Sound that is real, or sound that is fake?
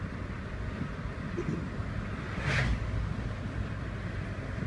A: real